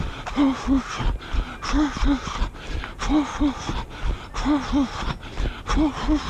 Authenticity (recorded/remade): recorded